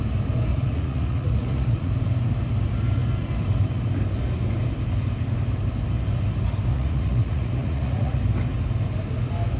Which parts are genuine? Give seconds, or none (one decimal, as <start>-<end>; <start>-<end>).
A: 0.0-0.5; 1.9-6.7; 8.2-9.6